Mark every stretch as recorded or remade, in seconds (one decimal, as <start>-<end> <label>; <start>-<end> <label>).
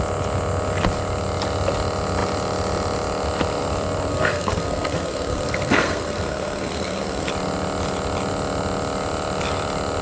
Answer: 0.0-4.1 recorded; 4.1-7.3 remade; 7.3-10.0 recorded